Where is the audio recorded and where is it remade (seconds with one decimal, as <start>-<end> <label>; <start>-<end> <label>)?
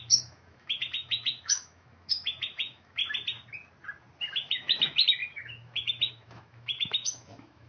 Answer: 0.0-3.0 remade; 3.0-4.2 recorded; 4.2-7.7 remade